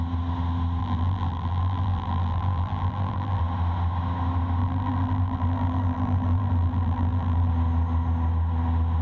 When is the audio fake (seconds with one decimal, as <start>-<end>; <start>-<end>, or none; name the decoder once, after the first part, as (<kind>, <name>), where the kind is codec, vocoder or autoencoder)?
0.8-3.4 (vocoder, BigVGAN v2); 4.6-7.5